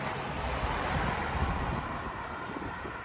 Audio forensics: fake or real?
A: fake